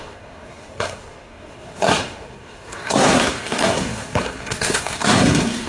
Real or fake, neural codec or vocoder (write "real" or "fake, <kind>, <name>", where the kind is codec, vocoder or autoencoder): fake, codec, SNAC